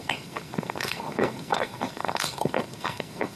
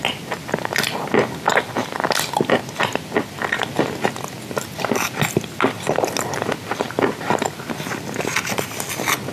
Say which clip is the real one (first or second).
second